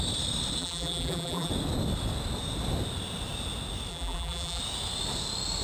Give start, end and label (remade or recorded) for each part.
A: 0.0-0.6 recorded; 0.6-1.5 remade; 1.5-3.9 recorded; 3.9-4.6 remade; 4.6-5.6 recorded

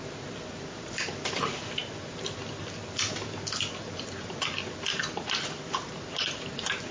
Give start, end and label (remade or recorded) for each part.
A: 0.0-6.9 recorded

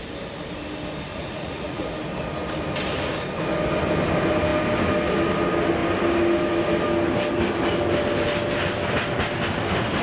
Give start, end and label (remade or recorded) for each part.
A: 0.0-1.1 recorded; 1.1-1.9 remade; 1.9-10.0 recorded